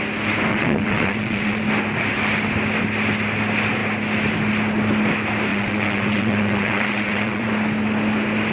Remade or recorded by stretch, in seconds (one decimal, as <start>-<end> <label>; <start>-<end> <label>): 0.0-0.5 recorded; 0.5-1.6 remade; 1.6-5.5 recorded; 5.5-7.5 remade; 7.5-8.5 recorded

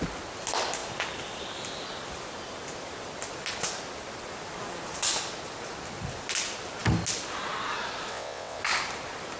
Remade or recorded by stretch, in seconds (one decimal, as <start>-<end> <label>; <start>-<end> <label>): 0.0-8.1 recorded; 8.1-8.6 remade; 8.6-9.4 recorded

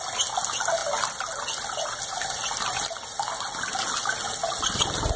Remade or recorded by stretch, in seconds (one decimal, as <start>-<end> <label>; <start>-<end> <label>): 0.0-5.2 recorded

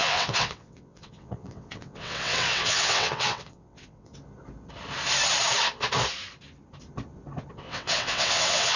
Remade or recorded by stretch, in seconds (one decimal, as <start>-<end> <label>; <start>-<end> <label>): 0.0-4.1 remade; 4.1-7.5 recorded; 7.5-8.8 remade

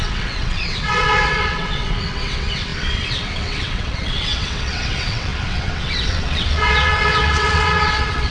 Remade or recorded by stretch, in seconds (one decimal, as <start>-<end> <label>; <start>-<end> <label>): 0.0-8.3 remade

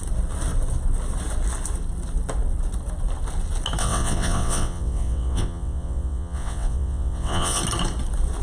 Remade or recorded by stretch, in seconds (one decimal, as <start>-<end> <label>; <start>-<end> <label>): 0.0-3.8 recorded; 3.8-7.6 remade; 7.6-8.4 recorded

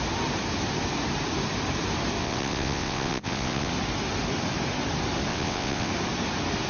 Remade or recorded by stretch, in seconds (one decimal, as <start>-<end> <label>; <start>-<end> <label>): 0.0-2.2 recorded; 2.2-3.7 remade; 3.7-5.3 recorded; 5.3-5.9 remade; 5.9-6.7 recorded